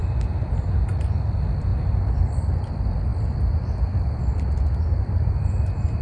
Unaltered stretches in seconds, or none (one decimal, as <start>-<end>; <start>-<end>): 0.0-6.0